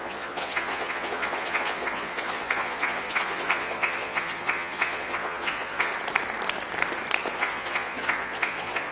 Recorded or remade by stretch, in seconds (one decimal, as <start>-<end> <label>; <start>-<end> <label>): 0.0-5.9 remade; 5.9-7.3 recorded; 7.3-8.9 remade